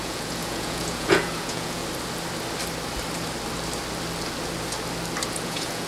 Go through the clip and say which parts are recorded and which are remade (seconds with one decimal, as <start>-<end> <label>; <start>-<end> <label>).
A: 0.0-1.8 remade; 1.8-5.3 recorded; 5.3-5.9 remade